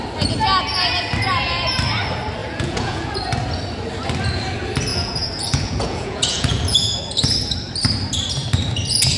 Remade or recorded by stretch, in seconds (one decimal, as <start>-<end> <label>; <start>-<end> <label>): 0.0-2.4 recorded; 2.4-3.1 remade; 3.1-4.9 recorded; 4.9-7.0 remade; 7.0-9.2 recorded